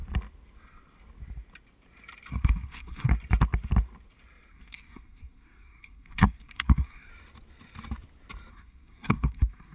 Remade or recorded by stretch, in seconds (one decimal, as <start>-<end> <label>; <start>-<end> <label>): 0.0-2.3 recorded; 2.3-3.1 remade; 3.1-4.5 recorded; 4.5-7.1 remade; 7.1-8.5 recorded; 8.5-9.7 remade